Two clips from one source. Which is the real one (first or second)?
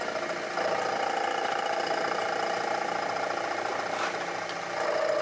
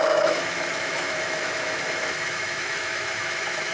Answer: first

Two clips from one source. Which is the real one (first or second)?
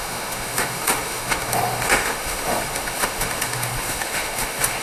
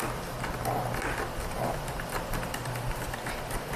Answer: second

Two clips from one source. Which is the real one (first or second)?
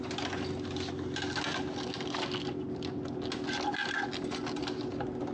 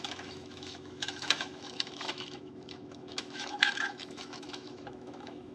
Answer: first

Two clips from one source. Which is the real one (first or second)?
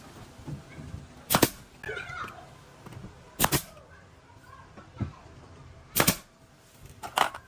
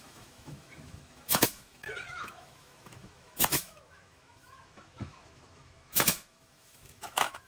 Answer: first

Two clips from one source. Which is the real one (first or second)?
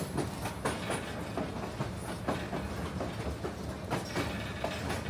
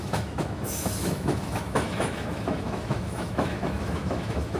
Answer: first